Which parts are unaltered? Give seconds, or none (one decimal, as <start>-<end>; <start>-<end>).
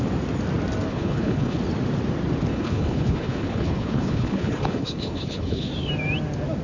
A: 0.0-0.9; 1.6-2.5; 5.7-6.6